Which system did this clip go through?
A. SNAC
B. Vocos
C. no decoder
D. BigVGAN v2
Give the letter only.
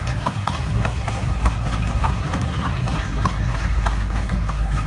A